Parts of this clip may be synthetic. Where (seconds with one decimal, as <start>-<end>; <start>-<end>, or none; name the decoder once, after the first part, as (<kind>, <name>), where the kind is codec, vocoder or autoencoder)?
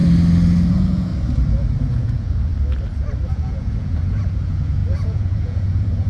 0.7-1.1 (vocoder, Vocos); 1.8-2.5; 3.3-6.1